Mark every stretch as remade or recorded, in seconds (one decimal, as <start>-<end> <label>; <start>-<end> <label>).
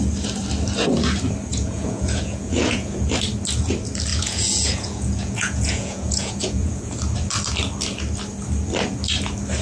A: 0.0-1.5 recorded; 1.5-3.1 remade; 3.1-4.1 recorded; 4.1-6.9 remade; 6.9-9.6 recorded